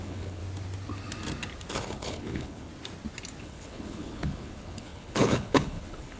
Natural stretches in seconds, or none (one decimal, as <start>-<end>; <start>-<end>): 0.4-1.7; 2.7-3.4